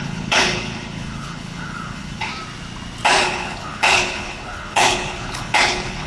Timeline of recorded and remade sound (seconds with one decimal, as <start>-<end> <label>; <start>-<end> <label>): 0.0-2.3 remade; 2.3-3.2 recorded; 3.2-6.1 remade